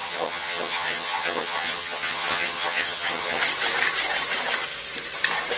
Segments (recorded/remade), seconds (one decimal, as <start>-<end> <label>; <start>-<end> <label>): 0.0-3.4 remade; 3.4-5.6 recorded